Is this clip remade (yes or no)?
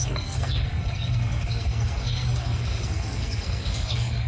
yes